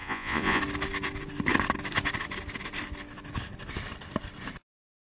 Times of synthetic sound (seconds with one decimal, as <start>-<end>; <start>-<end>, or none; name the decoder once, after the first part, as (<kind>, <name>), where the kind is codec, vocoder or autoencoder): 0.0-0.6 (vocoder, Vocos)